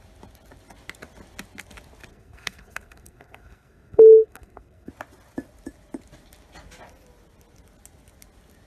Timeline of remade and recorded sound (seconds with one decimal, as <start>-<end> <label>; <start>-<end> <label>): 0.0-2.1 recorded; 2.1-4.9 remade; 4.9-8.7 recorded